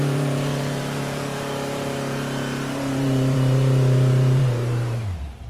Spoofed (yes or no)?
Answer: yes